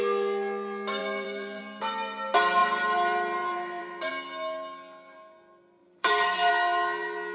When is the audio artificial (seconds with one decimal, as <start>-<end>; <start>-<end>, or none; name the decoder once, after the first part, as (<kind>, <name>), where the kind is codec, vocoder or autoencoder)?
1.0-1.6 (vocoder, BigVGAN v2); 2.6-4.1; 5.8-6.5